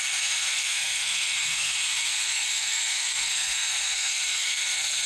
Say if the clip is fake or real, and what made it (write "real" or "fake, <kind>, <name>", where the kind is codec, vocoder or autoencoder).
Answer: fake, codec, SNAC